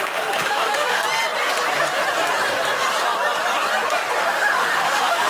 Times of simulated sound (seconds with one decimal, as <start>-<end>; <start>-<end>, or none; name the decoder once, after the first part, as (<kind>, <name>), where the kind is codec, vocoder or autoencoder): 0.0-1.0 (autoencoder, DAC-VAE); 4.2-5.3